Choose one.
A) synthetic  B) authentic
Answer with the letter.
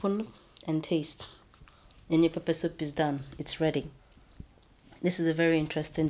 B